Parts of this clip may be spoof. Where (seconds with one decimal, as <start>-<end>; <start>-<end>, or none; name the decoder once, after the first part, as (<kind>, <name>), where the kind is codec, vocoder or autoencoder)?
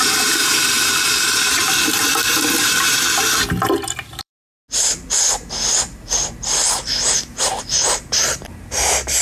0.0-4.3 (vocoder, BigVGAN v2); 6.0-9.2